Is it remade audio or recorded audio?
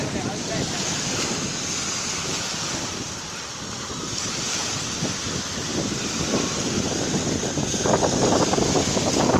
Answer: recorded